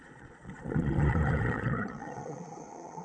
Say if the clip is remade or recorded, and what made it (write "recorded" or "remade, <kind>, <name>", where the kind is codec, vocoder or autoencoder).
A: remade, vocoder, Vocos